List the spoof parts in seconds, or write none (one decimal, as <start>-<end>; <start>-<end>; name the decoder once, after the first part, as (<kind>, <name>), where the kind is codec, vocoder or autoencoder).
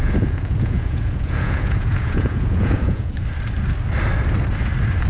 0.0-3.1 (vocoder, Vocos)